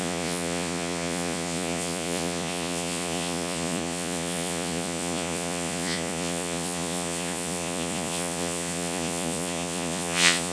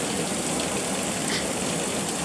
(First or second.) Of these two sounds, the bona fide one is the second